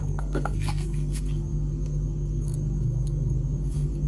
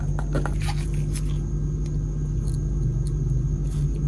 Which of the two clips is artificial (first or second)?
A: first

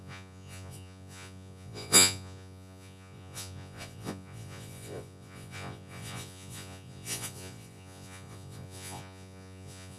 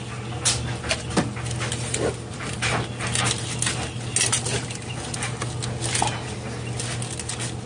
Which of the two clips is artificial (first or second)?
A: first